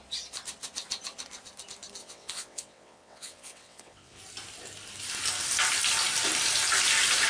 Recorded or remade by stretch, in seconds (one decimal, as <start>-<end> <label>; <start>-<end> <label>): 0.0-2.0 recorded; 2.0-4.2 remade; 4.2-7.3 recorded